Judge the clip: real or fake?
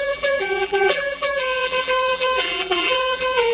fake